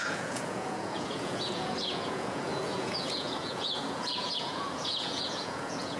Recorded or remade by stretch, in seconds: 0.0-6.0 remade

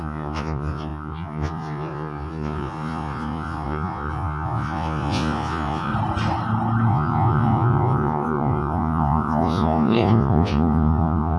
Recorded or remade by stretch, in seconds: 0.0-5.9 remade; 5.9-6.9 recorded; 6.9-11.4 remade

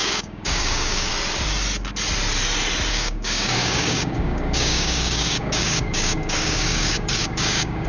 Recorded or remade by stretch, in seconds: 0.0-1.1 remade; 1.1-2.9 recorded; 2.9-7.9 remade